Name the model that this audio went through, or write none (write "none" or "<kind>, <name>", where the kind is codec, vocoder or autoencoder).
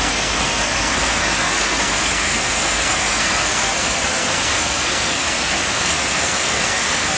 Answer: codec, SNAC